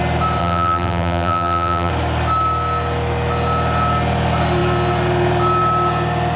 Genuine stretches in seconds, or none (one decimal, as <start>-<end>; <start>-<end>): 0.0-0.4; 1.9-6.4